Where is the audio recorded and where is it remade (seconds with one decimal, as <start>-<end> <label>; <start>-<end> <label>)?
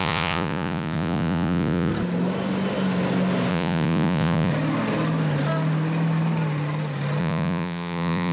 0.0-1.9 remade; 1.9-3.5 recorded; 3.5-4.5 remade; 4.5-7.2 recorded; 7.2-8.3 remade